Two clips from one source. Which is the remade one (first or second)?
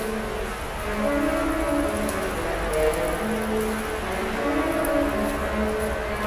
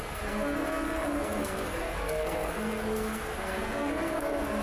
second